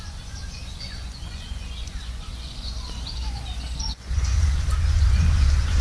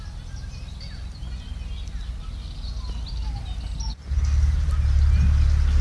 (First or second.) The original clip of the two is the second